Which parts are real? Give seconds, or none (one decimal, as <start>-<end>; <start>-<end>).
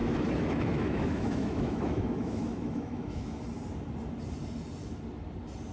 3.4-5.7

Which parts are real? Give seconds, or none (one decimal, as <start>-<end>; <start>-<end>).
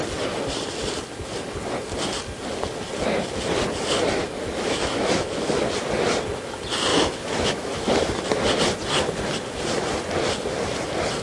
0.0-4.2; 5.6-6.9; 7.9-11.2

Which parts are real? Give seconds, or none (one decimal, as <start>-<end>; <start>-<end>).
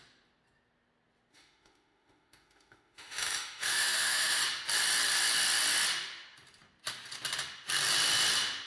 0.0-1.3; 4.4-8.7